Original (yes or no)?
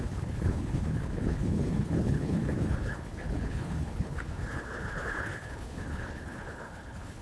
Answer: no